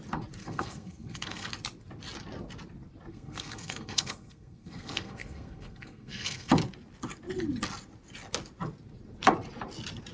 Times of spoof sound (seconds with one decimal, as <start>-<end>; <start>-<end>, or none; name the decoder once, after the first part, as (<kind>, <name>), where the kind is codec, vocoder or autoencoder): 0.4-1.5 (codec, SNAC); 3.1-6.5